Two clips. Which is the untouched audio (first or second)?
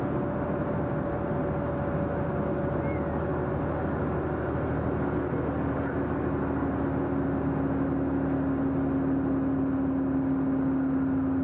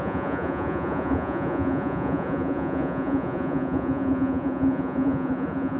first